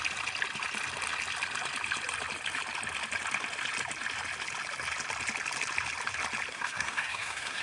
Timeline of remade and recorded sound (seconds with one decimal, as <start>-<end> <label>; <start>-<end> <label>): 0.0-6.5 recorded; 6.5-7.6 remade